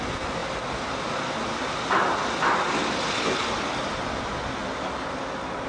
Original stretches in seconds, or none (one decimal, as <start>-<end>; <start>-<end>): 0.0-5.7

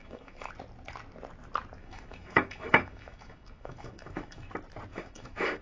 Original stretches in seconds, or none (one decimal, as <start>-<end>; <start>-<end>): 0.5-1.8; 4.5-4.9

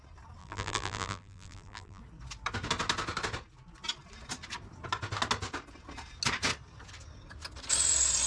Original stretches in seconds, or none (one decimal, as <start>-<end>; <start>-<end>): 0.0-0.4; 2.0-8.3

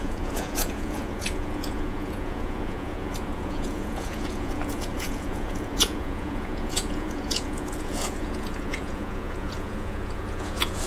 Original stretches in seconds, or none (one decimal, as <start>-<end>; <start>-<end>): none

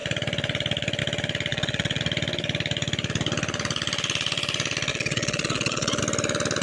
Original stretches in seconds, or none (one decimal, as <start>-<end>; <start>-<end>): 0.0-1.5; 2.0-4.9; 6.0-6.6

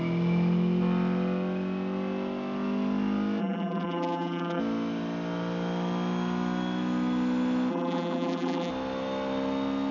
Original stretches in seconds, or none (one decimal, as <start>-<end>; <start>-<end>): 0.0-3.4; 4.6-7.7; 8.7-9.9

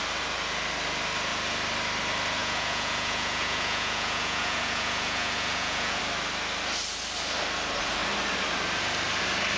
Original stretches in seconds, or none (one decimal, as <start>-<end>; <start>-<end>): 0.0-2.4; 6.0-9.6